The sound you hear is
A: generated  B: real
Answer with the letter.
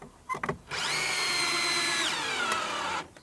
B